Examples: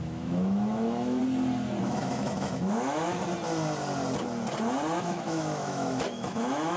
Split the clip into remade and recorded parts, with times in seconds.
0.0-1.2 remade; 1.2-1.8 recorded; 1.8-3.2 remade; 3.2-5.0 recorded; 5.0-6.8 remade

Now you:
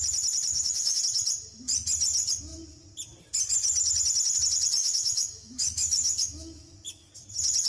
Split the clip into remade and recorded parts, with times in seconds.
0.0-0.5 recorded; 0.5-1.0 remade; 1.0-4.8 recorded; 4.8-7.1 remade; 7.1-7.7 recorded

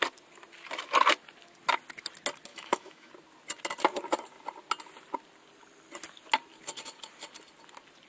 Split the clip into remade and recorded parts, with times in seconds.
0.0-2.5 recorded; 2.5-3.1 remade; 3.1-8.1 recorded

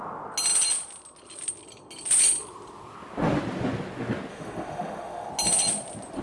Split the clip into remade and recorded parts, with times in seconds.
0.0-4.3 recorded; 4.3-5.3 remade; 5.3-6.2 recorded

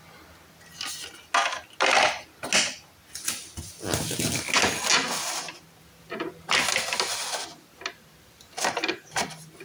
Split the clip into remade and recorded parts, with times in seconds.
0.0-9.6 recorded

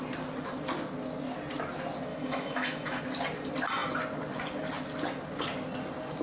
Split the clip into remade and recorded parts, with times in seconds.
0.0-2.1 recorded; 2.1-3.0 remade; 3.0-6.2 recorded

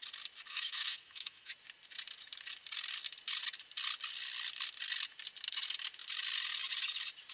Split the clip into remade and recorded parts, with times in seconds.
0.0-0.5 recorded; 0.5-1.5 remade; 1.5-7.3 recorded